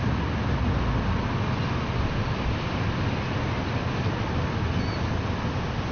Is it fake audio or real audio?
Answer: real